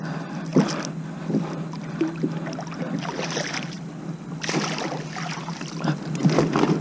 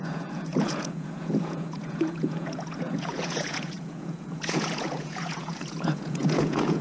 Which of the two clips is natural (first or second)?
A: first